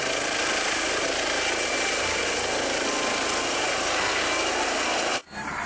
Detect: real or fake real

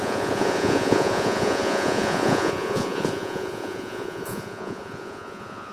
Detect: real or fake fake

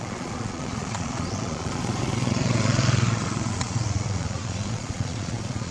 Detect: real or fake fake